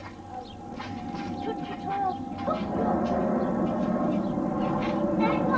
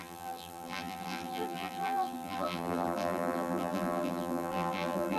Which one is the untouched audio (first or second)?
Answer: first